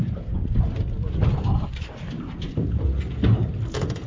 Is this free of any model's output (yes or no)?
yes